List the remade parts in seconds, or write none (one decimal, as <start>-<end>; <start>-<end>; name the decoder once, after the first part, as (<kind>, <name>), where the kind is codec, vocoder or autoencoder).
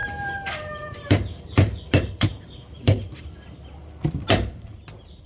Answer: 0.0-3.2 (vocoder, BigVGAN v2)